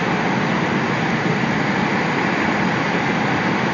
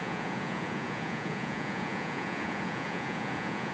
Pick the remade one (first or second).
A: second